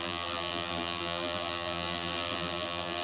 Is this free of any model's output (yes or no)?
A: no